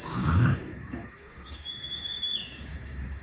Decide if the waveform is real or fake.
fake